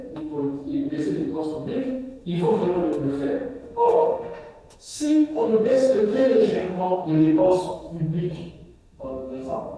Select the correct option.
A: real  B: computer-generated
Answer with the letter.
B